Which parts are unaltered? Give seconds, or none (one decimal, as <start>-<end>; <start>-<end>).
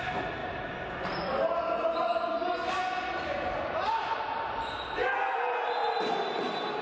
0.0-6.8